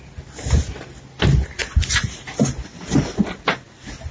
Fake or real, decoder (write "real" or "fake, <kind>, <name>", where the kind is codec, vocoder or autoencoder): real